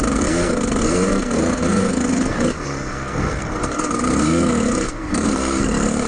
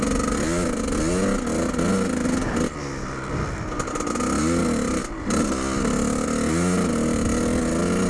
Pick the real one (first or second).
second